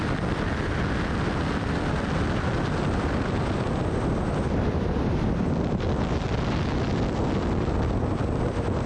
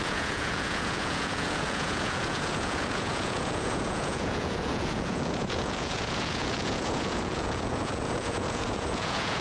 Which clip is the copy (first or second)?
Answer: second